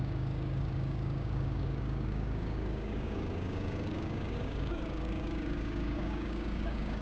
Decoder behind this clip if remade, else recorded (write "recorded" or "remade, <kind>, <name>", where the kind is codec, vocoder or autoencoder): remade, codec, DAC